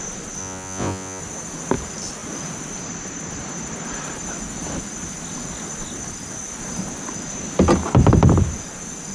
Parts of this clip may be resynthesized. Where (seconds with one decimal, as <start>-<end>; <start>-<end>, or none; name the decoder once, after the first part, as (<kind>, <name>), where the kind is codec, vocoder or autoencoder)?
0.4-1.2 (vocoder, Vocos)